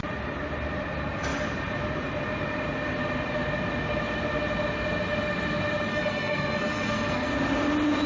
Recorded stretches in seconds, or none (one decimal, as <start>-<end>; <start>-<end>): 0.0-5.9; 7.3-8.1